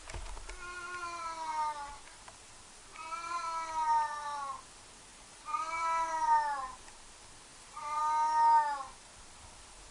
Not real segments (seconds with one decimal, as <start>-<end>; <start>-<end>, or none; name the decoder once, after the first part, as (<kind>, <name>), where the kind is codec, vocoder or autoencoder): 5.1-6.1 (vocoder, BigVGAN v2); 7.5-8.0